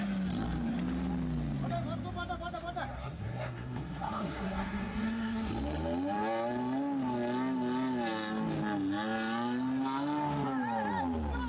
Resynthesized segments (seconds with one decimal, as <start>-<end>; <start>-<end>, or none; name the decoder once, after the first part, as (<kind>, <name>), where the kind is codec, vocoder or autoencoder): 2.9-5.5 (codec, SNAC)